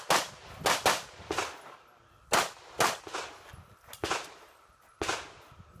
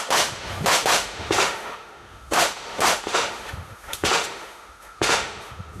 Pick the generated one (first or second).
second